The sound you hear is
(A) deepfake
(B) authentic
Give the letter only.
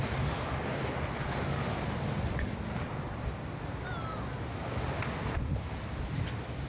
B